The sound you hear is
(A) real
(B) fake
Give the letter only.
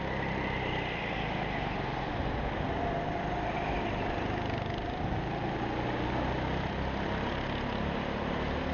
A